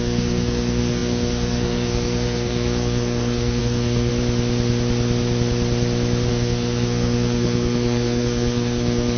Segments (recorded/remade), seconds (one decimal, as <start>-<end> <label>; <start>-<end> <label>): 0.0-4.1 remade; 4.1-6.3 recorded; 6.3-9.2 remade